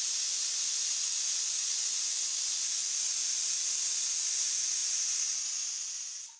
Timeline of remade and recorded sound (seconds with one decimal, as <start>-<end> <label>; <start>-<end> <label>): 0.0-6.4 recorded